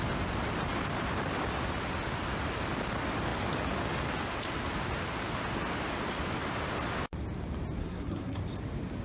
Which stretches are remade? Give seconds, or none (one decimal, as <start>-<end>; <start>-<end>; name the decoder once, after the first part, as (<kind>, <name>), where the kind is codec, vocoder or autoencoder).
7.8-8.4 (codec, SNAC)

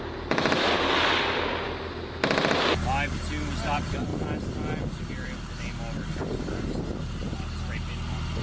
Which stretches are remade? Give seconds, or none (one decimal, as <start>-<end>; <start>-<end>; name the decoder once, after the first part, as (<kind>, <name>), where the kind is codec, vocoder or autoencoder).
none

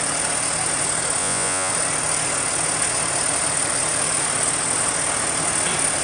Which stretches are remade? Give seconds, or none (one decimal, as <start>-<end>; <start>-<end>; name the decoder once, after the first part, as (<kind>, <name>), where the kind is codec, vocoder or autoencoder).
1.2-1.7 (vocoder, Vocos)